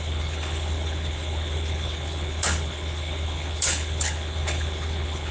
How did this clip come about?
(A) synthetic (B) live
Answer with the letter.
A